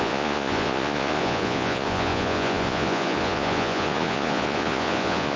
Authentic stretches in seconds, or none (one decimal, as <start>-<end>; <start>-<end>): none